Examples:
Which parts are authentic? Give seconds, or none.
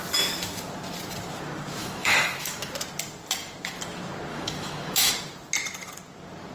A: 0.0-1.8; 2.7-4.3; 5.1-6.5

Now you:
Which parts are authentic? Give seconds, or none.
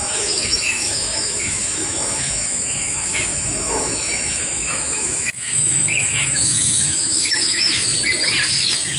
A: 7.9-8.5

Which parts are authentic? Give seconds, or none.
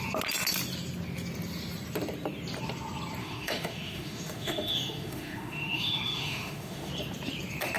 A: 0.0-3.2; 6.9-7.8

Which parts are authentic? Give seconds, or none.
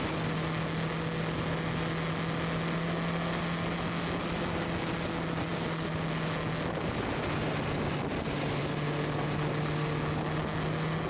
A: 0.0-11.1